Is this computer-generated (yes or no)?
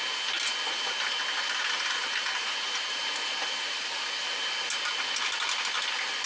no